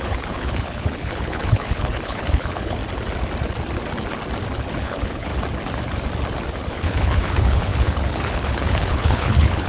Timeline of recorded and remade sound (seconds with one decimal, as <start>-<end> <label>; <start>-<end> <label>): 0.0-2.8 remade; 2.8-4.7 recorded; 4.7-5.3 remade; 5.3-6.7 recorded; 6.7-9.7 remade